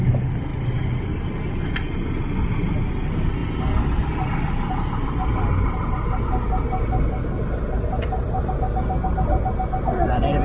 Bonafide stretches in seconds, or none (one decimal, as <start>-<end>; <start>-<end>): 0.0-10.4